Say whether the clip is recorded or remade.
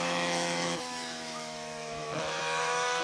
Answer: remade